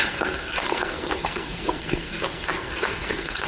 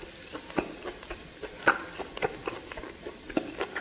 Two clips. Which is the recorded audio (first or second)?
second